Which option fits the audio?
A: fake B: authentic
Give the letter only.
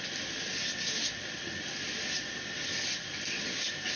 B